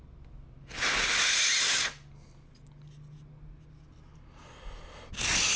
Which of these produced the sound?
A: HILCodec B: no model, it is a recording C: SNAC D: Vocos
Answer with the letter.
B